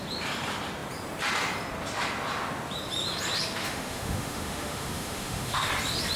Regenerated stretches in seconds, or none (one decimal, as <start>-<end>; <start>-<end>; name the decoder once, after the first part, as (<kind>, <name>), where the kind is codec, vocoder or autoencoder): 3.6-5.7 (autoencoder, DAC-VAE)